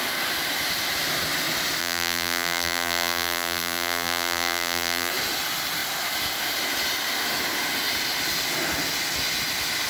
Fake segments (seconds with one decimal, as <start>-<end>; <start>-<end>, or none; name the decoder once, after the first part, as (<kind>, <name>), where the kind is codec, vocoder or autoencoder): 1.8-5.1 (vocoder, BigVGAN v2)